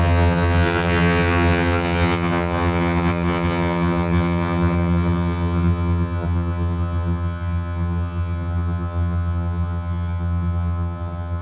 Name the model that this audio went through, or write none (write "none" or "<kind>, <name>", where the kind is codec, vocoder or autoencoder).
vocoder, HiFi-GAN